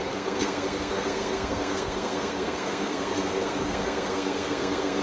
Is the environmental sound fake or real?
fake